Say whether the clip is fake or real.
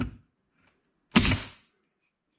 real